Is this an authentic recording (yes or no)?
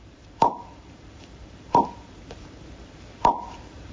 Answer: no